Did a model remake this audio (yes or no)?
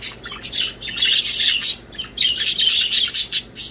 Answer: no